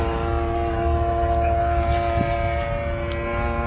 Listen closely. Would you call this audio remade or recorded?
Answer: recorded